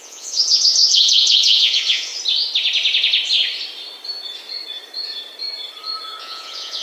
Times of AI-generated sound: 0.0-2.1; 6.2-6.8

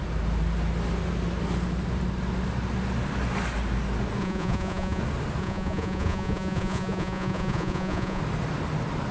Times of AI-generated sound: 4.2-5.0; 5.4-8.2

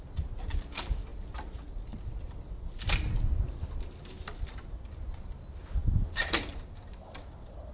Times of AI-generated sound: none

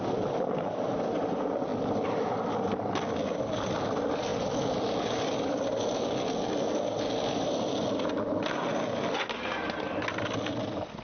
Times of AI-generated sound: none

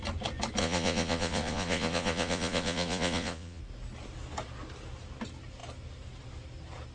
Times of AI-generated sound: 0.6-3.6

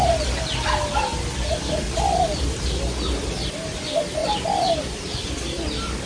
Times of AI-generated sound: none

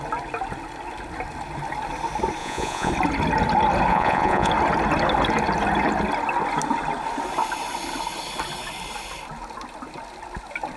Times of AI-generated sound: 2.4-2.9; 3.9-4.5